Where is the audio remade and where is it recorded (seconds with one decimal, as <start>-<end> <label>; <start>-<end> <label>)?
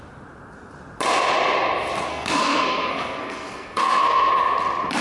0.0-2.1 recorded; 2.1-4.3 remade; 4.3-5.0 recorded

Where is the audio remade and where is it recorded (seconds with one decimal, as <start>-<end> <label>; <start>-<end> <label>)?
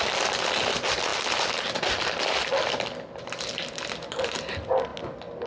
0.0-5.5 recorded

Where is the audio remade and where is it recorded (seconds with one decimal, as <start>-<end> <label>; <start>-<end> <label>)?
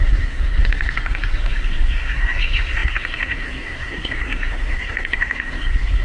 0.0-6.0 remade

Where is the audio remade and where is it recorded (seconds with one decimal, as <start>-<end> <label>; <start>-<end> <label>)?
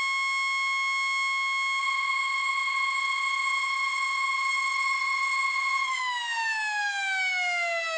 0.0-1.8 recorded; 1.8-6.0 remade; 6.0-8.0 recorded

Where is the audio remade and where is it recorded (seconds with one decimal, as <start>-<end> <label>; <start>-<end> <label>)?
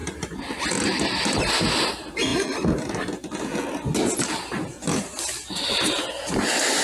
0.0-6.8 recorded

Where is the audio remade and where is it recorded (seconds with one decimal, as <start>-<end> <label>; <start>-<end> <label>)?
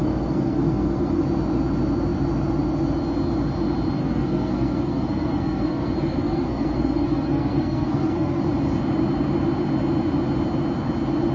0.0-1.2 remade; 1.2-4.0 recorded; 4.0-8.4 remade; 8.4-11.3 recorded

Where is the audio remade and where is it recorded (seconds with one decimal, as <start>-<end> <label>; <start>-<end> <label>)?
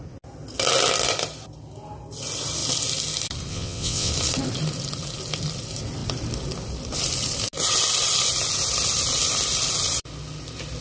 0.0-3.5 recorded; 3.5-4.1 remade; 4.1-10.8 recorded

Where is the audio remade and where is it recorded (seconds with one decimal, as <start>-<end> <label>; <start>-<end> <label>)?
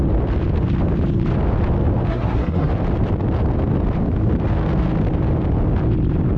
0.0-2.1 recorded; 2.1-2.7 remade; 2.7-6.4 recorded